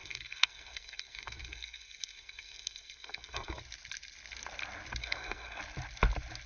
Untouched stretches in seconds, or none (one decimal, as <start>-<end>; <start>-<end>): 3.6-5.0; 5.6-6.5